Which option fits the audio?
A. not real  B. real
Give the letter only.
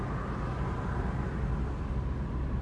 B